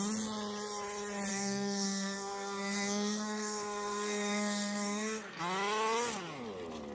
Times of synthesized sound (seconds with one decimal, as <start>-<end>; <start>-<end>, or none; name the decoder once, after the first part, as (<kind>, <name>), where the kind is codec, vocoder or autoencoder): 1.3-5.4 (codec, SNAC)

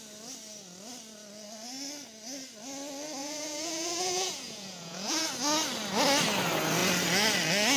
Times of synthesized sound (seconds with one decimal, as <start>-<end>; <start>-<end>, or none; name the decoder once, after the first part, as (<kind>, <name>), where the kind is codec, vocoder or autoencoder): 3.2-5.3 (vocoder, Vocos)

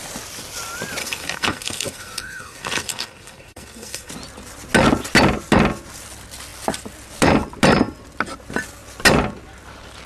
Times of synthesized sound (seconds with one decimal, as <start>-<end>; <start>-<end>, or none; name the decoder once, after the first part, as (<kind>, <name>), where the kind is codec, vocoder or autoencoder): 1.0-4.1 (codec, SNAC)

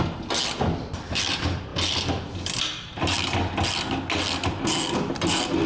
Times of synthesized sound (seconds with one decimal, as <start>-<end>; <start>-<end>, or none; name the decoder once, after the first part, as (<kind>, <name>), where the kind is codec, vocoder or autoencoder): none

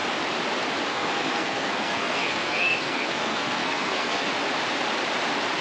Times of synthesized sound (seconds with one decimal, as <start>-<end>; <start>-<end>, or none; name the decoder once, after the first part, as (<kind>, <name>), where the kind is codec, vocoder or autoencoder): 0.9-4.3 (codec, SNAC)

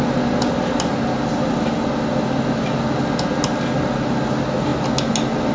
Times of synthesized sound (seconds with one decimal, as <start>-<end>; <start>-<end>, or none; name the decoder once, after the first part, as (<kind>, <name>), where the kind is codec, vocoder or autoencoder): none

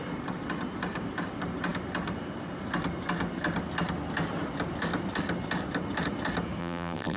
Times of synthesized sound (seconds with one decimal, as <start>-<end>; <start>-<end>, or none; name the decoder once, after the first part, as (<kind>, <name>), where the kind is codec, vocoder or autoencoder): 6.6-7.2 (vocoder, BigVGAN v2)

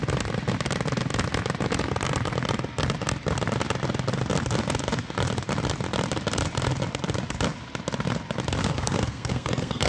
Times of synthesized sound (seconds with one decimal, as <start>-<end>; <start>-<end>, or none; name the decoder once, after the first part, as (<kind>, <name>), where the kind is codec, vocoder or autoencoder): 8.6-9.9 (codec, SNAC)